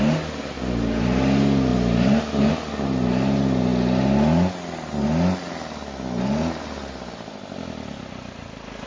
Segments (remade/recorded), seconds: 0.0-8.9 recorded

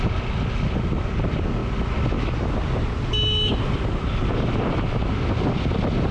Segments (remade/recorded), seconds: 0.0-6.1 recorded

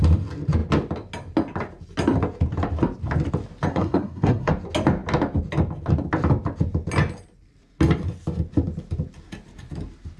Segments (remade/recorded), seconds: 0.0-3.7 recorded; 3.7-4.5 remade; 4.5-10.2 recorded

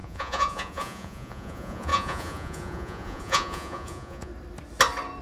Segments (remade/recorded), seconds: 0.0-4.3 remade; 4.3-5.2 recorded